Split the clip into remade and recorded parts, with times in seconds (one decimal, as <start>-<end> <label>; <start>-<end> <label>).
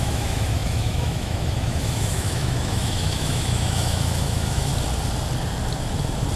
0.0-4.7 remade; 4.7-6.4 recorded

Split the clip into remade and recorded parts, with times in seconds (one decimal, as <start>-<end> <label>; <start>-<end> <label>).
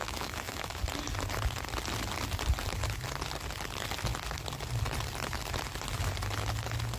0.0-0.8 remade; 0.8-7.0 recorded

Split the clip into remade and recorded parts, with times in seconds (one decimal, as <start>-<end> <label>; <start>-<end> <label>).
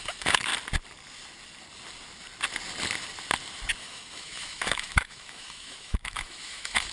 0.0-0.5 remade; 0.5-3.8 recorded; 3.8-6.9 remade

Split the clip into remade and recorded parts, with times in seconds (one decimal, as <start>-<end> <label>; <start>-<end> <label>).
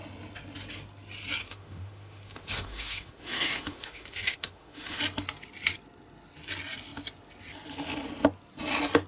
0.0-1.4 recorded; 1.4-5.0 remade; 5.0-9.1 recorded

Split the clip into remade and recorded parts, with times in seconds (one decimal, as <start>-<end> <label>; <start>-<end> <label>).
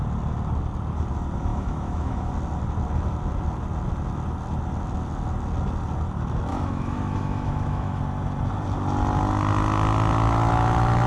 0.0-1.5 recorded; 1.5-2.3 remade; 2.3-6.5 recorded; 6.5-8.0 remade; 8.0-11.1 recorded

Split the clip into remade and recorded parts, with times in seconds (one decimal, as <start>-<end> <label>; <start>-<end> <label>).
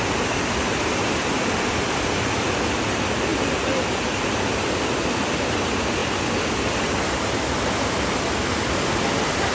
0.0-9.5 recorded